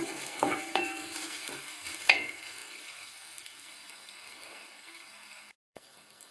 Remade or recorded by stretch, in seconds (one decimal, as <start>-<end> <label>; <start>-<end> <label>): 0.0-6.3 remade